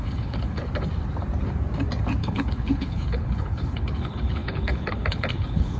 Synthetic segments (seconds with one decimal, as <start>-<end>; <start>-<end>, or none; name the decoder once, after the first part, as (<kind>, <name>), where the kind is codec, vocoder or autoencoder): 0.0-0.6 (codec, HILCodec); 2.2-5.8